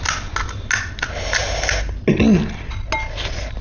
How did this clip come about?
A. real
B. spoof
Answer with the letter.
A